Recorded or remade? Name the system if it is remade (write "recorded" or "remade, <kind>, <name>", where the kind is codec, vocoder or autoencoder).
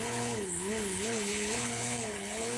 remade, codec, HILCodec